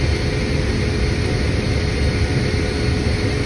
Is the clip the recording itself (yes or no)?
yes